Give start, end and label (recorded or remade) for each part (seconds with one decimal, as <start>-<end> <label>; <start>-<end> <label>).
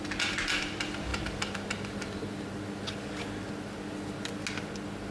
0.0-5.1 recorded